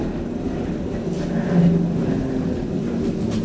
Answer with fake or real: real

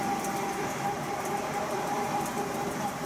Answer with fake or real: fake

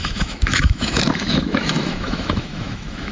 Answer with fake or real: fake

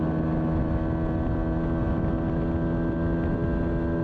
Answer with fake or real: real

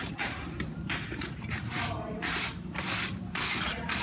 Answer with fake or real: fake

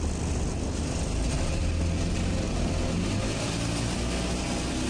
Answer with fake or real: real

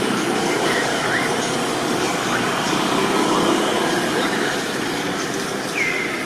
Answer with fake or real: fake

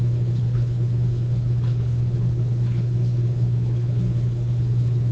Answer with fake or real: fake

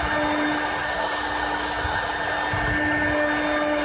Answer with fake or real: real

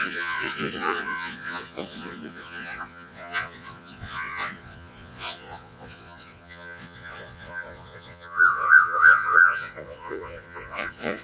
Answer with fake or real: fake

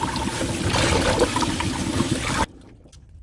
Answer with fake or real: real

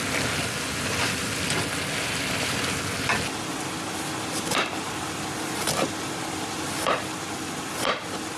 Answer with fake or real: real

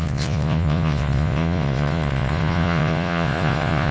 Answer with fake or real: fake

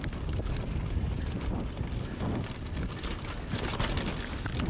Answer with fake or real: real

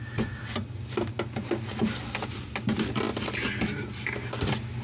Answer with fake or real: real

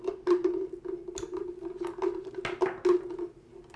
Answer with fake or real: real